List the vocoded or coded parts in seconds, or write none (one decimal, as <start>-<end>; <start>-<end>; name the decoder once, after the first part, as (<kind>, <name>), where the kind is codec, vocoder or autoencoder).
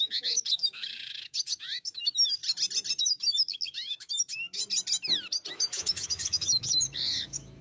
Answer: 0.0-2.4 (autoencoder, DAC-VAE); 3.0-4.6; 5.5-7.6